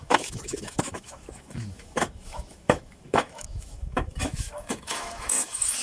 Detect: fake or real fake